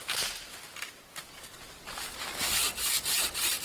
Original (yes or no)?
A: yes